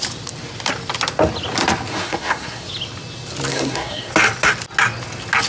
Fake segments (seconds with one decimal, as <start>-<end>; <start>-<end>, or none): 1.9-2.7; 3.5-4.1

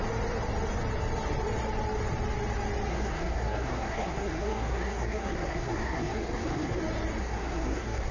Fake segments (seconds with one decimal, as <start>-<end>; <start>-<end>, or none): 2.9-6.8; 7.2-8.1

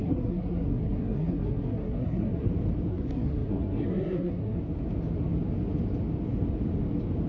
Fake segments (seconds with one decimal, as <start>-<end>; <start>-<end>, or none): 0.0-2.5; 2.9-4.6

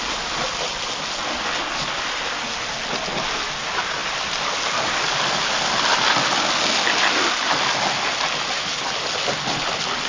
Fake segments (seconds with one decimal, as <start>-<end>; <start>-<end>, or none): none